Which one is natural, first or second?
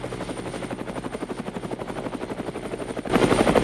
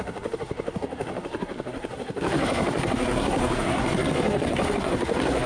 first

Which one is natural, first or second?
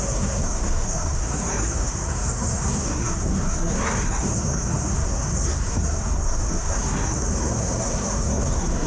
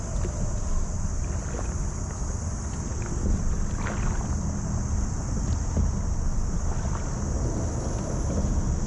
second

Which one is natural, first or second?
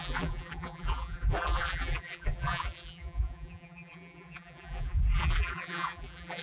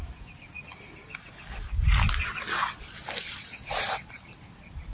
second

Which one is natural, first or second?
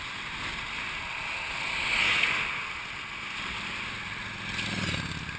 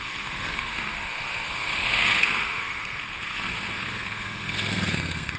first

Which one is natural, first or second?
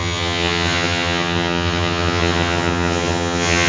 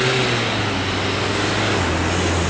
second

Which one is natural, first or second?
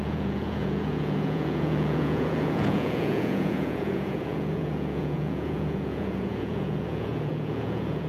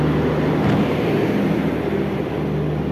second